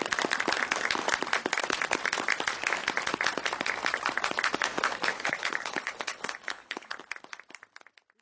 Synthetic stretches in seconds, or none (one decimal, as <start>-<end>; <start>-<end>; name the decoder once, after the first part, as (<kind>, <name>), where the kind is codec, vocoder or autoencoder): 5.1-7.0 (codec, HILCodec)